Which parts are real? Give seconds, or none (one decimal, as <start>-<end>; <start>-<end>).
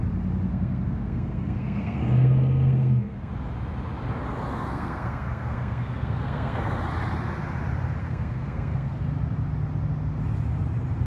0.0-0.5; 3.3-4.5; 6.8-8.0; 8.9-11.1